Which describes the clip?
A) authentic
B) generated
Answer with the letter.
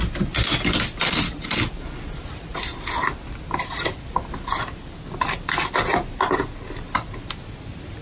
A